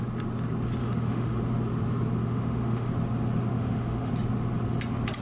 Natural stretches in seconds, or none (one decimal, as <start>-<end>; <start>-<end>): 0.0-0.8; 1.4-2.2; 2.9-3.5; 4.1-5.2